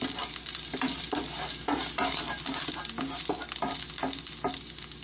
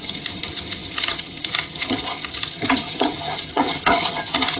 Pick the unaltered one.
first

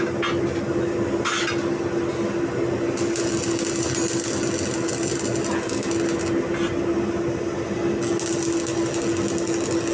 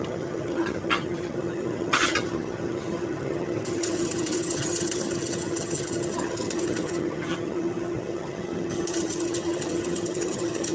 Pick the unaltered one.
first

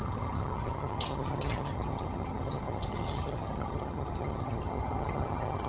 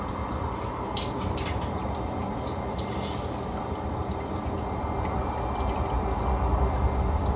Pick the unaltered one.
second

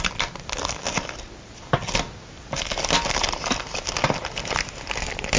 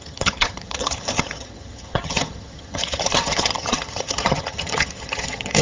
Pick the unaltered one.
first